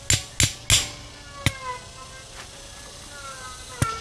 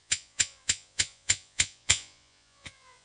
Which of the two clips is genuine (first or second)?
first